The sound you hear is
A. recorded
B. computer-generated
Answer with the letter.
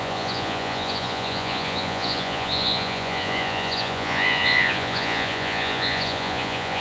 B